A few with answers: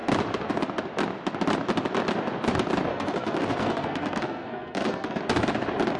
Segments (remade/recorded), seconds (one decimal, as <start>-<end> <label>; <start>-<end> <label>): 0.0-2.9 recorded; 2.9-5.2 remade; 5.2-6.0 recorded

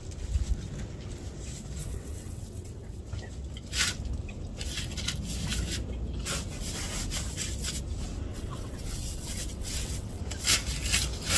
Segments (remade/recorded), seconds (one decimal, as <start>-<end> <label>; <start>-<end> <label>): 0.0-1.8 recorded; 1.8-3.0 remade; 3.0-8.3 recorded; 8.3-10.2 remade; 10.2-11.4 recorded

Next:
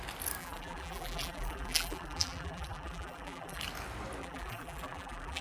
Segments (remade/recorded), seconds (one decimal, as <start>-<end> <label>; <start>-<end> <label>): 0.0-0.4 recorded; 0.4-3.6 remade; 3.6-4.2 recorded; 4.2-5.4 remade

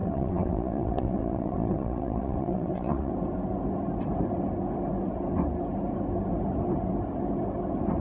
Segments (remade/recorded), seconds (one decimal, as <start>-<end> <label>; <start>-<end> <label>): 0.0-3.1 remade; 3.1-8.0 recorded